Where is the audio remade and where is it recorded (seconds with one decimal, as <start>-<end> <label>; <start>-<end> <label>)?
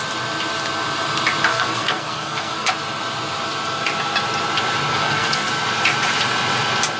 0.0-1.5 recorded; 1.5-2.7 remade; 2.7-4.9 recorded; 4.9-5.5 remade; 5.5-7.0 recorded